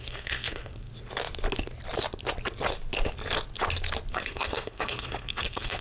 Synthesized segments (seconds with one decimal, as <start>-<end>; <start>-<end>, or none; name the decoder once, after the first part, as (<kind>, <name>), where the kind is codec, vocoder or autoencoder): 0.0-0.9 (codec, SNAC); 4.1-5.8